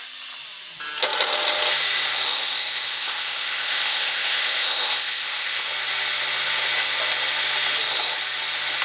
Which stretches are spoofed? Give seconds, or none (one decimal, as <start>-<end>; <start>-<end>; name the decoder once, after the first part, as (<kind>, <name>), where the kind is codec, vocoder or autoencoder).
2.3-5.7 (codec, ZipCodec)